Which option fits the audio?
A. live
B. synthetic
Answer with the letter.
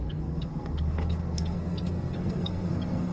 B